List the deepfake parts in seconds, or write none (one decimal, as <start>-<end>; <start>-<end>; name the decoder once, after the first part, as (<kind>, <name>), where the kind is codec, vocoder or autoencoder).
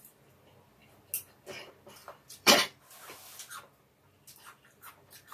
2.0-2.8 (vocoder, BigVGAN v2)